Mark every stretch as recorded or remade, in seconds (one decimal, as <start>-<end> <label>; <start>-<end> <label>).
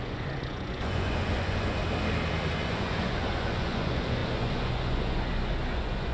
0.0-1.8 remade; 1.8-2.5 recorded; 2.5-6.1 remade